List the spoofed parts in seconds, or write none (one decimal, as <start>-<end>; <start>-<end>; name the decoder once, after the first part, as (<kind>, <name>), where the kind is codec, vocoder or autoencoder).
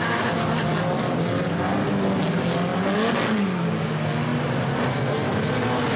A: none